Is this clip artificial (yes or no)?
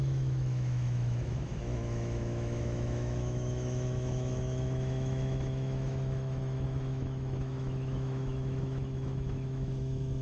yes